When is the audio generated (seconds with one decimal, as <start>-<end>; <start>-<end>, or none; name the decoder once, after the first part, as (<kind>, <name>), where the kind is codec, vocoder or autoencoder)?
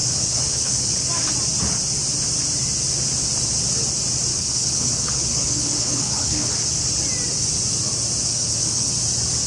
0.0-1.0 (codec, HILCodec); 4.3-6.5; 8.3-8.9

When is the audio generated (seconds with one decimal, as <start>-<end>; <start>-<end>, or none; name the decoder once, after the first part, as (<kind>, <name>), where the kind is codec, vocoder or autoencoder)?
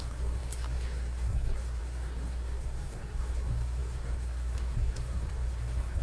0.0-6.0 (codec, SNAC)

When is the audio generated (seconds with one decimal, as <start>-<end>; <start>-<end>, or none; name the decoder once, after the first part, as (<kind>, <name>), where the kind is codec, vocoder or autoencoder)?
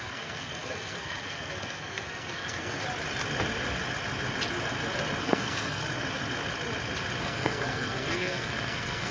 0.0-2.8 (codec, SNAC); 5.2-5.8; 7.2-9.1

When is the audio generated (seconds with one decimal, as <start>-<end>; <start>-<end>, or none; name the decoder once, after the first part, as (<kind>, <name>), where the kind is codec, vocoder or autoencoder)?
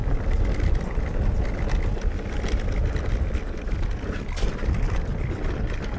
none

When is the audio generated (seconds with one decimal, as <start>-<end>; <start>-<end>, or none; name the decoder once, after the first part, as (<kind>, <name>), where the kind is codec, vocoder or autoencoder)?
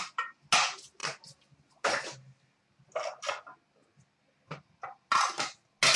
none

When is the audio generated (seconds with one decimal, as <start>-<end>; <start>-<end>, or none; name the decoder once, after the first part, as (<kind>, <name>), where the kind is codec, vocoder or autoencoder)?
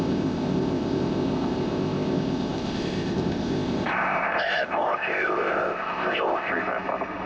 0.0-6.5 (codec, ZipCodec)